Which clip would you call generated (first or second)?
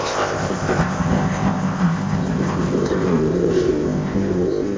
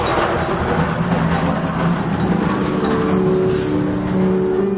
first